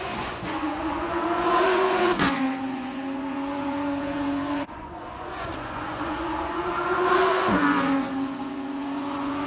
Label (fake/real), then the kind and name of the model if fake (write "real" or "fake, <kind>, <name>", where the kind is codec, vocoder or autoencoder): fake, vocoder, Vocos